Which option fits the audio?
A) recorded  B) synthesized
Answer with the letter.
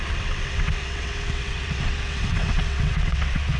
B